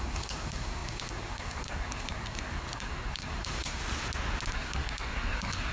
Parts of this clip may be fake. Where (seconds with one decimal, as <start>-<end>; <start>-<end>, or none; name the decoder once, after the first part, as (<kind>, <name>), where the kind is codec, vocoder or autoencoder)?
0.0-3.8 (codec, SNAC); 4.5-5.7